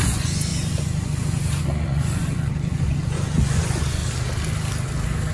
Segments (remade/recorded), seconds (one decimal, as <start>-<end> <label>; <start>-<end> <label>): 0.0-4.0 remade; 4.0-5.3 recorded